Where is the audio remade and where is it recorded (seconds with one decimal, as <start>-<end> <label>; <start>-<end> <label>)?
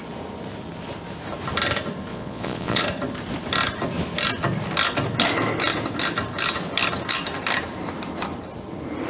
0.0-2.1 recorded; 2.1-2.8 remade; 2.8-9.1 recorded